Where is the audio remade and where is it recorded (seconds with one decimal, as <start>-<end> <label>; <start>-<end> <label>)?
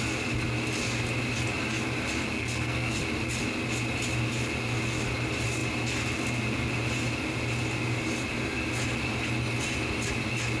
0.0-2.3 recorded; 2.3-3.0 remade; 3.0-10.6 recorded